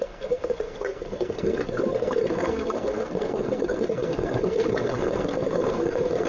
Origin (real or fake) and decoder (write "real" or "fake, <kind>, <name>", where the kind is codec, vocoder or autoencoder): fake, codec, SNAC